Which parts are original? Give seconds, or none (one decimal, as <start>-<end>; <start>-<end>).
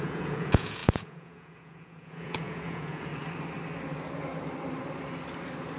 3.1-5.8